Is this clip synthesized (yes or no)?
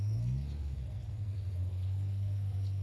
yes